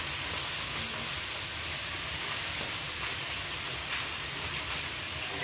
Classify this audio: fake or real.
real